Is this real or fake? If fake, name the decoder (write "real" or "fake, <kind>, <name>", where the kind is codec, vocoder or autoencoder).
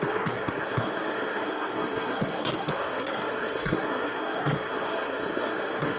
fake, codec, SNAC